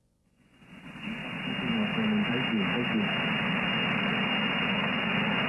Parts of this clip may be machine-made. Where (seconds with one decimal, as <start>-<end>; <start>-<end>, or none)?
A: 0.0-1.2; 4.5-5.5